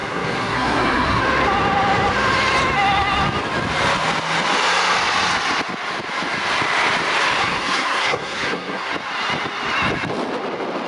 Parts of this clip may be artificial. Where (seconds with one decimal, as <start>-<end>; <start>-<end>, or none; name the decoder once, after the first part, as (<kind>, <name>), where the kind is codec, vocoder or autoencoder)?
0.0-1.2 (codec, SNAC); 7.4-8.9